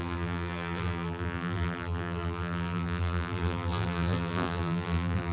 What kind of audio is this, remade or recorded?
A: remade